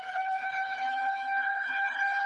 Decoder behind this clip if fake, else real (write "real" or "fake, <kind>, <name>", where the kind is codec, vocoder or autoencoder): fake, codec, HILCodec